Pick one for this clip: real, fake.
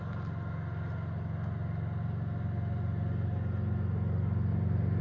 real